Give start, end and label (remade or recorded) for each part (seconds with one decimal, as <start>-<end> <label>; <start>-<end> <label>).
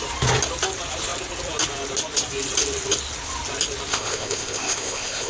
0.0-3.9 recorded; 3.9-5.3 remade